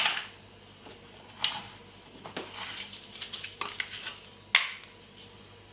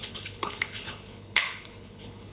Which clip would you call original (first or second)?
first